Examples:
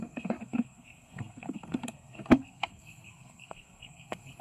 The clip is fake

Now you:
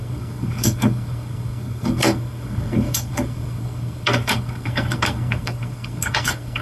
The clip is fake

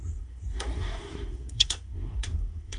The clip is fake